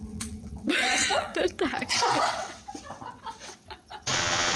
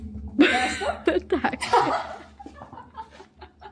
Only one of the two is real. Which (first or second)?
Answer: second